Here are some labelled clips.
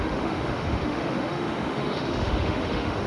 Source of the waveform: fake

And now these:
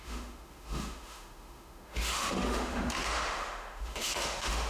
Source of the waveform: fake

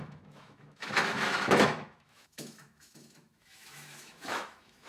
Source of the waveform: fake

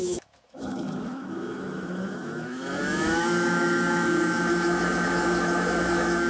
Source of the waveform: fake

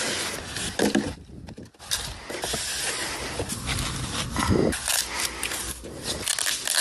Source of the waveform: real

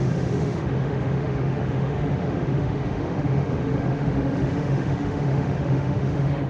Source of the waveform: fake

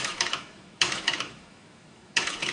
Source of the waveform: fake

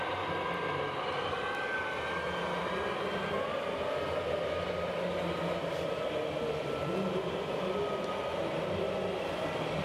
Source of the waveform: real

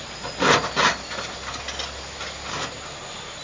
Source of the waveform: real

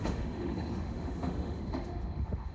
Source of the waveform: fake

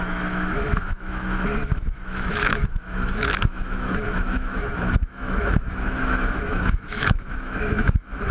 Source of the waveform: fake